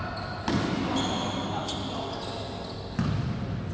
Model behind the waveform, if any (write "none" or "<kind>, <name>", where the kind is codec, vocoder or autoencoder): none